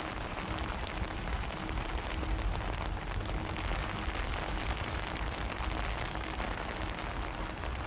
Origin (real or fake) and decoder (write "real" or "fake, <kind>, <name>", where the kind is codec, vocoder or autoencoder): real